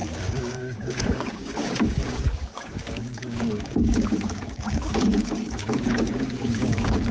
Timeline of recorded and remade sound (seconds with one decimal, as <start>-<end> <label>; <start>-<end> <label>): 0.0-7.1 remade